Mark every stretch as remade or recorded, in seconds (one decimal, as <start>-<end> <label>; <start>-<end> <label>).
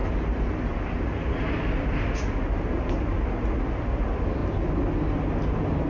0.0-5.9 recorded